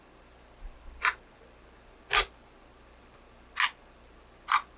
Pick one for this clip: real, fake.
real